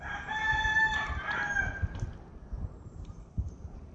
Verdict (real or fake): fake